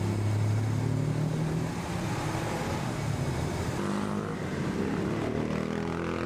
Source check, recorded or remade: recorded